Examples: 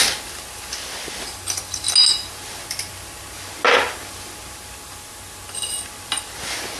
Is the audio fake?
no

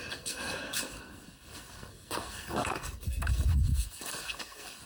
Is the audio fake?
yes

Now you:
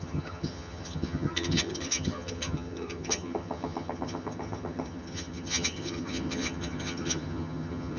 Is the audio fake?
yes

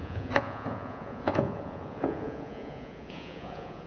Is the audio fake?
yes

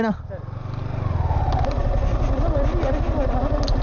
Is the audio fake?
no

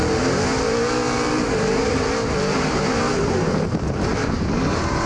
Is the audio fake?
yes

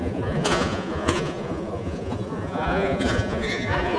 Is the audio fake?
yes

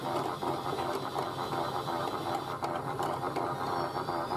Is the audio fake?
no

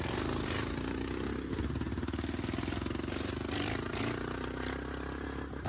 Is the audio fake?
no